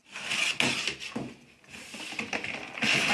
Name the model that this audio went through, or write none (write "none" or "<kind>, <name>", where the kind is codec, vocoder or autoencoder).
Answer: none